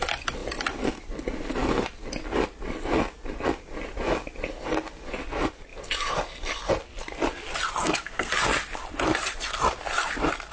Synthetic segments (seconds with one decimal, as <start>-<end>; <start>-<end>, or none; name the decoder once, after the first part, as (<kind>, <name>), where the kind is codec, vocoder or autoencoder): 7.8-8.3 (codec, SNAC)